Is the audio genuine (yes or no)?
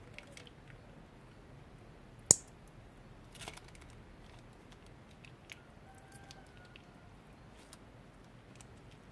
yes